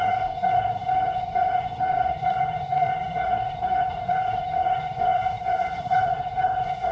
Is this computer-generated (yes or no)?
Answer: yes